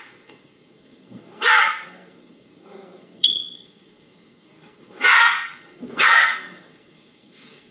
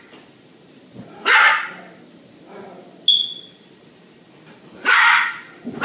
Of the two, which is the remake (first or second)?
first